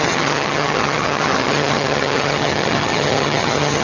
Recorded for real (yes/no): no